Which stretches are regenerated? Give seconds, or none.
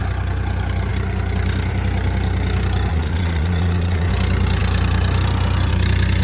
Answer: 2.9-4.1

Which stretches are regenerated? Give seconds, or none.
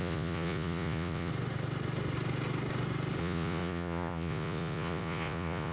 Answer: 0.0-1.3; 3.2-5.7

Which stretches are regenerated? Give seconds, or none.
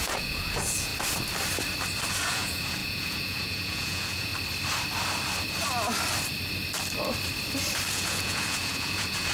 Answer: 0.0-0.9; 2.1-4.3; 7.9-9.3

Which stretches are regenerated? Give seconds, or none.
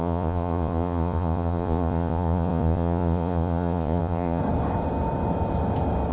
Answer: 0.0-4.4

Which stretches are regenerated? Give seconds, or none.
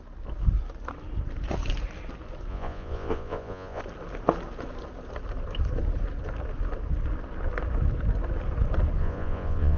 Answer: 2.5-3.8; 9.0-9.8